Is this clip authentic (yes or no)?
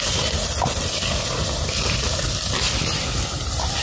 yes